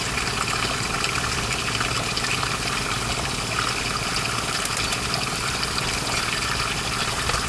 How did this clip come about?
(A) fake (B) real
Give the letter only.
B